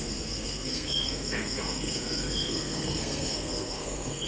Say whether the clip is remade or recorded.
remade